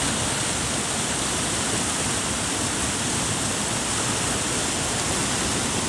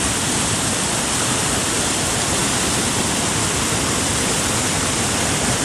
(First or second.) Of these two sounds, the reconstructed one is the second